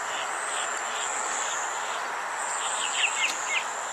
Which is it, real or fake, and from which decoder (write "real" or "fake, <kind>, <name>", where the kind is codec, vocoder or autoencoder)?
real